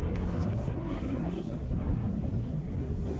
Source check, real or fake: fake